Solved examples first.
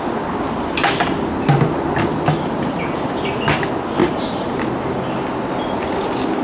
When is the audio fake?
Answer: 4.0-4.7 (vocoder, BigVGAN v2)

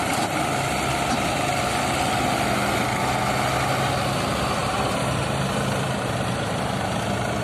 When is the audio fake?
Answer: 4.6-7.0 (vocoder, BigVGAN v2)

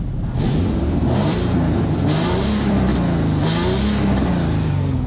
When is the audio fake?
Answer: 0.0-2.9 (vocoder, BigVGAN v2); 4.3-5.1

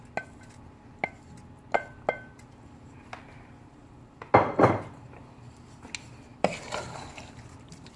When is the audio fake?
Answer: 6.3-6.8 (vocoder, BigVGAN v2)